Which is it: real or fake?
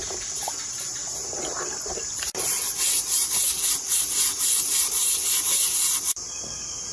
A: fake